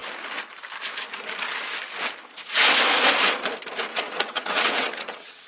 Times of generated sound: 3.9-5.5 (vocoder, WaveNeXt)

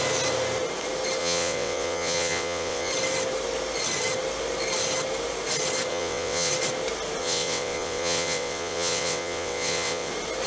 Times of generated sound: 1.2-2.9 (vocoder, WaveNeXt); 5.9-6.5; 7.2-10.1